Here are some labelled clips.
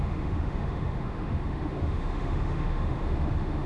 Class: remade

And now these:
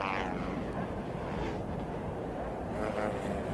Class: recorded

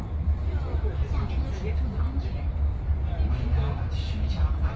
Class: recorded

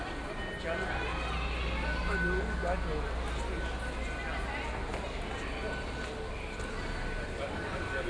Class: recorded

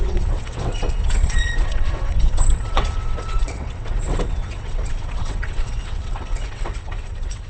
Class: remade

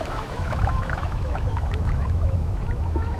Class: remade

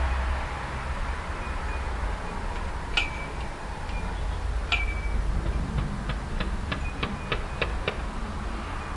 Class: recorded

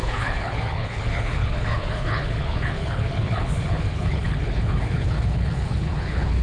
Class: remade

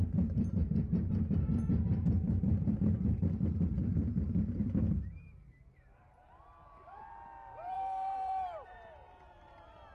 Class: remade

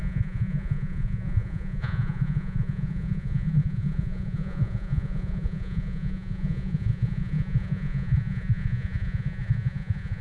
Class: remade